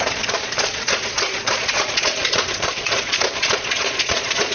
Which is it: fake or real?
fake